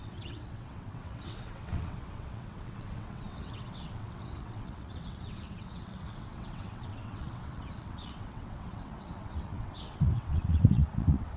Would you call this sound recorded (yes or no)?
no